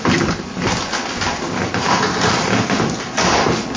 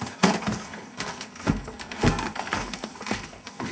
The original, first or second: first